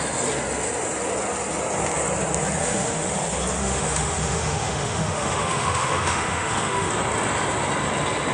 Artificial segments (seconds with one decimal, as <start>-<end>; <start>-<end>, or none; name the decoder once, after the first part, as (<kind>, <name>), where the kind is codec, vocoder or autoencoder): 2.6-3.1 (autoencoder, DAC-VAE); 3.6-6.9